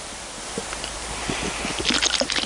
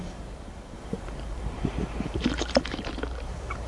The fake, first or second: second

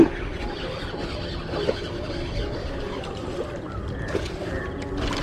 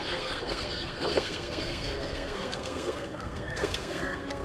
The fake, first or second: second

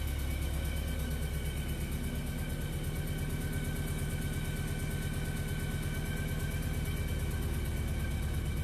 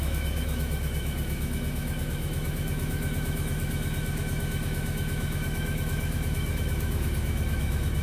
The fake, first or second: second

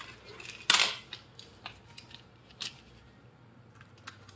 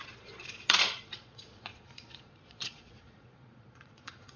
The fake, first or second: second